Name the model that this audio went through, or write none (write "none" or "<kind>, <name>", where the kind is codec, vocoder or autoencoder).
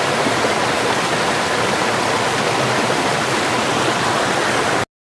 none